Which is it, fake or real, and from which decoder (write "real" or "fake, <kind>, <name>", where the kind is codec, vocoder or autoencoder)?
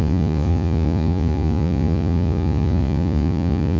fake, vocoder, Vocos